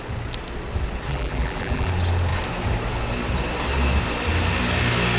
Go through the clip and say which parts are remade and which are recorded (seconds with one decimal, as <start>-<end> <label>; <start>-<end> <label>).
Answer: 0.0-1.1 recorded; 1.1-1.9 remade; 1.9-5.2 recorded